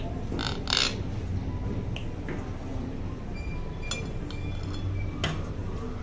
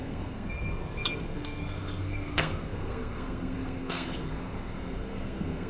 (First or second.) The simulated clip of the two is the second